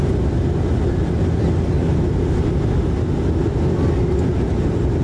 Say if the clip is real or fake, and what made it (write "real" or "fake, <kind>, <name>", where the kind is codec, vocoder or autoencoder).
real